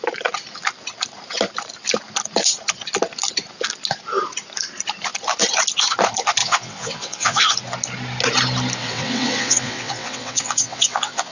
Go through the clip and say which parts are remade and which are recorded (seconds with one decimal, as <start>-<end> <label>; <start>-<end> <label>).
0.0-6.4 recorded; 6.4-7.4 remade; 7.4-8.8 recorded; 8.8-11.3 remade